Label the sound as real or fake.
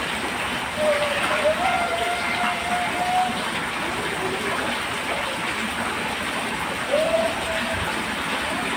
real